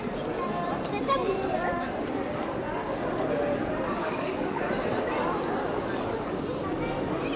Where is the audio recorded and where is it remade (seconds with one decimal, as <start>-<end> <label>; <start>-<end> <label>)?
0.0-4.0 recorded; 4.0-4.7 remade; 4.7-7.4 recorded